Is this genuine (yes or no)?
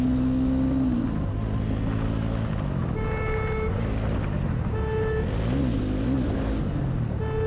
yes